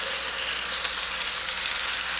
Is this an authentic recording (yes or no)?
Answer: yes